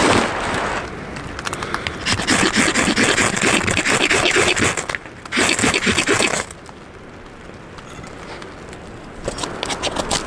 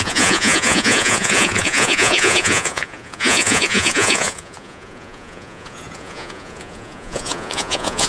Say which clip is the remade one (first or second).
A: second